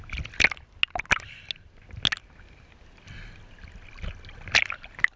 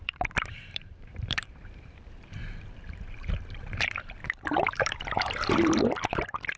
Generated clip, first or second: second